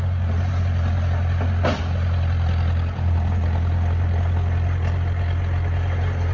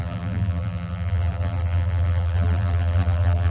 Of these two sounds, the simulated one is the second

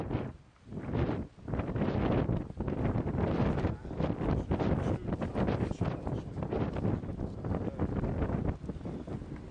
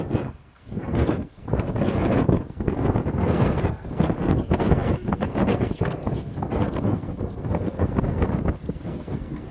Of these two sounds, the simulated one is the second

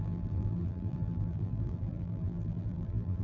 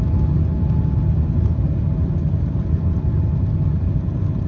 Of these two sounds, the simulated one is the first